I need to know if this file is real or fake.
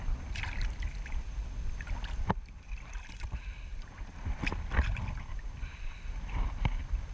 fake